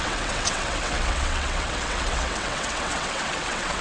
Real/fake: fake